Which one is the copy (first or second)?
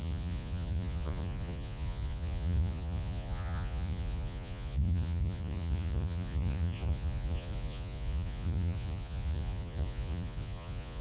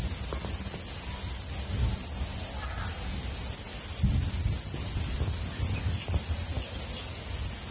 first